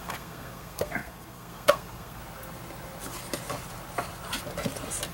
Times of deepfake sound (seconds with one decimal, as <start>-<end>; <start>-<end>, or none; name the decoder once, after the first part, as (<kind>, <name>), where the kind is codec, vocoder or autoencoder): 0.0-2.2 (codec, SNAC)